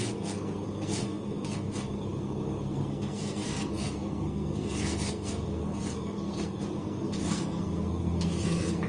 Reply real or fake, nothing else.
fake